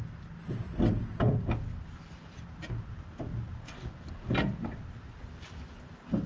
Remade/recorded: recorded